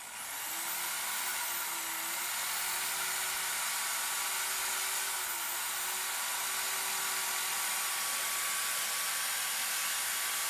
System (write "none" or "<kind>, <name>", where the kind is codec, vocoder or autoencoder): none